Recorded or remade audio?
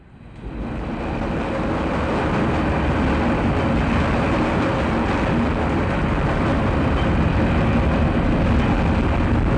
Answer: recorded